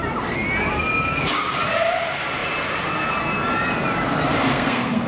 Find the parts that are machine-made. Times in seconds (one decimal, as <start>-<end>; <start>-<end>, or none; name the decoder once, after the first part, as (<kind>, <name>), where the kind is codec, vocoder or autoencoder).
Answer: 4.5-5.1 (codec, SNAC)